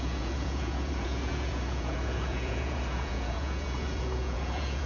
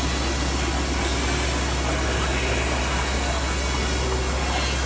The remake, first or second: first